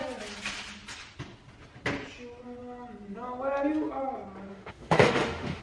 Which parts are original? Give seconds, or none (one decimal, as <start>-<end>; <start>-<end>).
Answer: 0.0-4.5